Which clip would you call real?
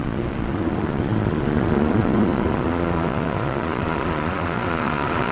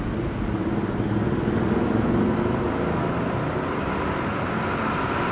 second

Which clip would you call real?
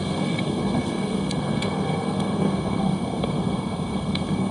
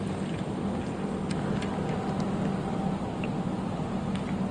second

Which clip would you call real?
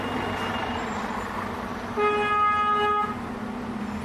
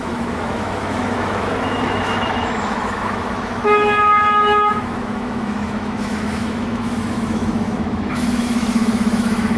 first